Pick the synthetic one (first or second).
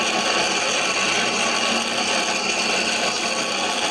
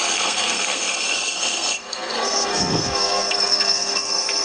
second